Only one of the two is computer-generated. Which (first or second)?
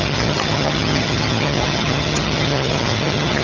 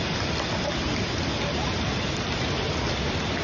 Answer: first